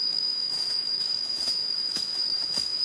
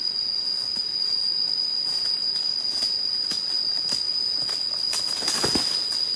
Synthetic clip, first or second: first